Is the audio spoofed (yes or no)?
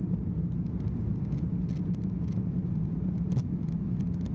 no